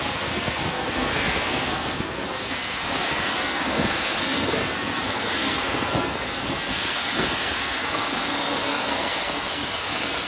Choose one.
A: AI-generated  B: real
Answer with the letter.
A